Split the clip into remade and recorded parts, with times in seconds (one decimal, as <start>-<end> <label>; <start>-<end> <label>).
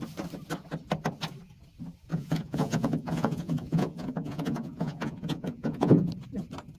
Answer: 0.0-2.1 recorded; 2.1-6.1 remade; 6.1-6.8 recorded